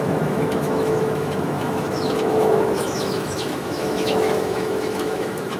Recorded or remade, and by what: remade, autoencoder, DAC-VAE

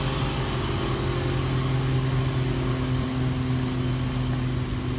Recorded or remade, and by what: recorded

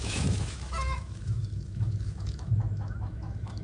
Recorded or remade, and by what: remade, autoencoder, DAC-VAE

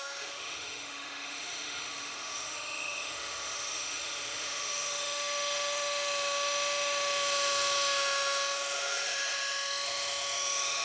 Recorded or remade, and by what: remade, autoencoder, DAC-VAE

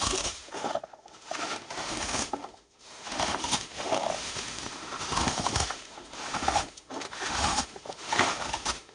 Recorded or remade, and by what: remade, autoencoder, DAC-VAE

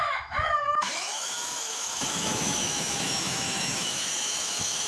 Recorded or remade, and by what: remade, autoencoder, DAC-VAE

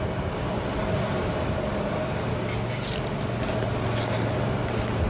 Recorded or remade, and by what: recorded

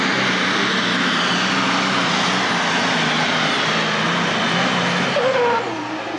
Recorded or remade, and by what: recorded